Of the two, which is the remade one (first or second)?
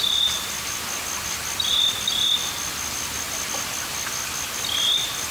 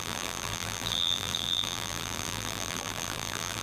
second